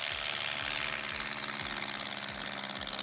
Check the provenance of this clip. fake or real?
real